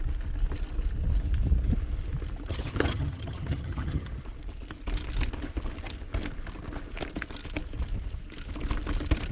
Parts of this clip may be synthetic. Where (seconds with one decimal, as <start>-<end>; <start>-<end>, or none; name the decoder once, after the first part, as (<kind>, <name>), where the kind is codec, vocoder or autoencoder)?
2.5-4.1 (vocoder, HiFi-GAN)